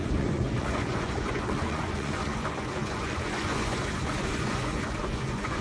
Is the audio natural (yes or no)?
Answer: no